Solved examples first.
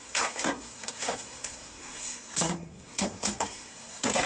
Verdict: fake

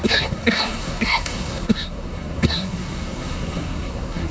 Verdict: fake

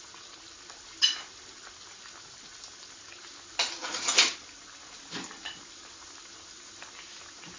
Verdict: real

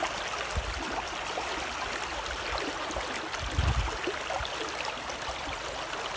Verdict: real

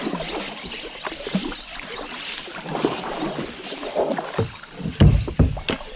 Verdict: real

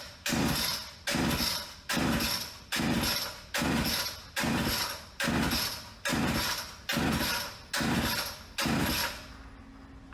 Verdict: real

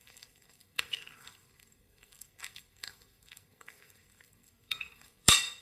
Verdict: fake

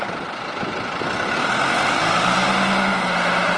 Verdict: real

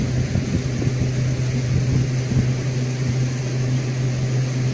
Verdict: real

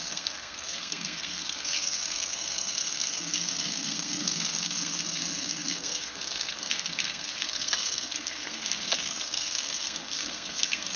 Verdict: fake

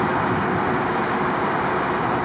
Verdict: real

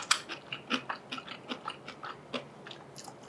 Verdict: real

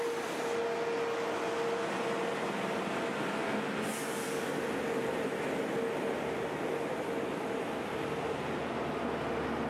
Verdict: real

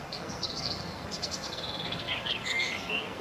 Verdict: fake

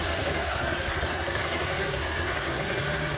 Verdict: fake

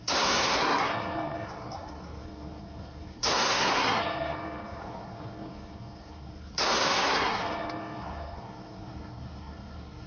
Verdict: fake